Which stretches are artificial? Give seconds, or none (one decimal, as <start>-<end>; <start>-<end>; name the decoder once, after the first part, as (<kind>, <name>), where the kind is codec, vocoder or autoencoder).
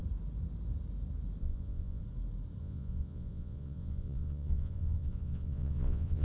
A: 1.4-2.0 (vocoder, Vocos); 2.6-6.2